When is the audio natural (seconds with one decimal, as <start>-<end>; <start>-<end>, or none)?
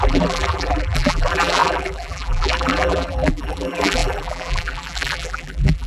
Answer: none